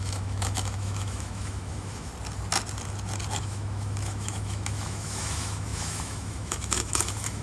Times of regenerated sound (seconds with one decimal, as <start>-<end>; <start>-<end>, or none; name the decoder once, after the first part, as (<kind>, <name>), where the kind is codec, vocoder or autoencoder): 0.0-2.1 (autoencoder, DAC-VAE); 3.4-7.4